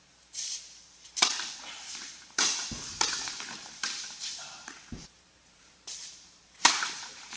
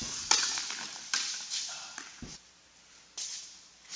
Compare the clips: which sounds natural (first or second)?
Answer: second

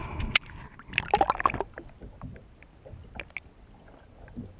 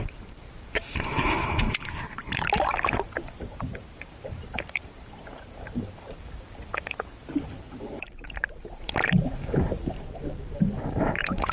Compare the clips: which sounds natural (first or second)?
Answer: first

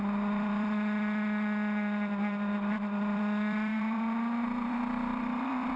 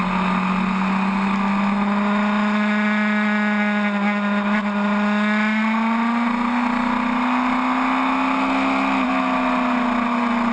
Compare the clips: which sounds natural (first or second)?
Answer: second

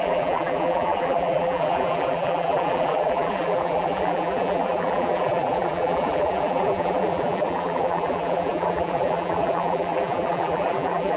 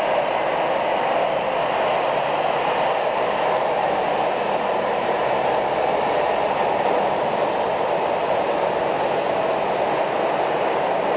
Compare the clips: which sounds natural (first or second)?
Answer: second